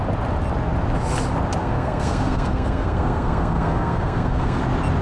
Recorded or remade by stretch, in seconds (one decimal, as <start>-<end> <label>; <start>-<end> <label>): 0.0-1.6 recorded; 1.6-4.6 remade; 4.6-5.0 recorded